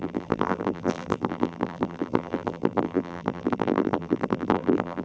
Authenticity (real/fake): fake